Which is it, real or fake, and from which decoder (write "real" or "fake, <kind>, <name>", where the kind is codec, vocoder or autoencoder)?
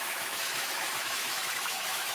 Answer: fake, autoencoder, DAC-VAE